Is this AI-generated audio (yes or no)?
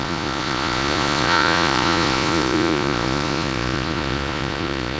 yes